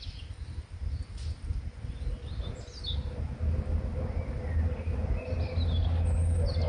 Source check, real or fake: real